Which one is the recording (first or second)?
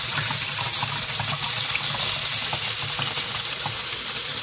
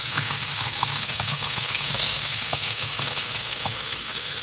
first